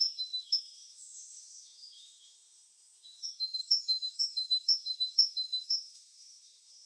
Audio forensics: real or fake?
fake